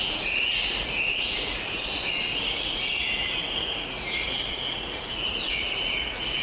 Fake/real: fake